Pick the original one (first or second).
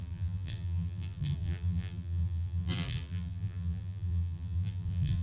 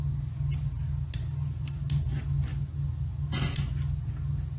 second